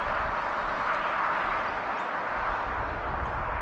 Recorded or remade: recorded